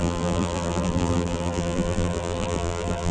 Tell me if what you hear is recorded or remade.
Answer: remade